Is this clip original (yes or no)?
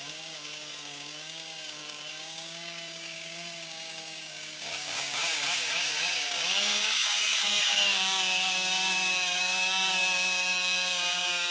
no